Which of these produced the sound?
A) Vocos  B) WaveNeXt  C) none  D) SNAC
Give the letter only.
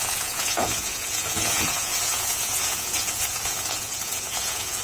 A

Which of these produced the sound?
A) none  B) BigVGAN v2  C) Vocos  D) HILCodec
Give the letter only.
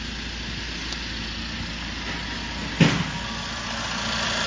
A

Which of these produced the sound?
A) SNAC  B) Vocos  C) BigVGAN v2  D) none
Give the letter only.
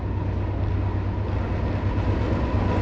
D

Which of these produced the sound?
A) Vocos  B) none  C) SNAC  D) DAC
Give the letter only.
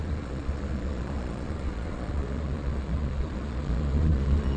A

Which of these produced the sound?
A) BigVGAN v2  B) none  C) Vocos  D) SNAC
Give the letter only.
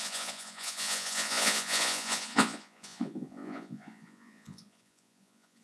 C